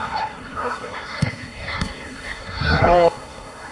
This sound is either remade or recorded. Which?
remade